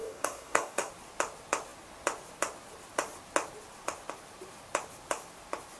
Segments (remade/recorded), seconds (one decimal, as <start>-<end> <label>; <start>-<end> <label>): 0.0-0.9 remade; 0.9-5.8 recorded